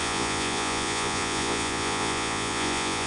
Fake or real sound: fake